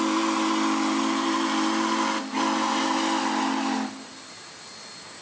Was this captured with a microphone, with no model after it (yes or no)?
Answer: yes